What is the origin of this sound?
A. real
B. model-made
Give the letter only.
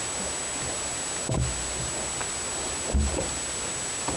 A